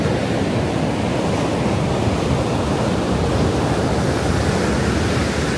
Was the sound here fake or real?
real